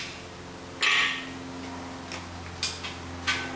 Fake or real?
real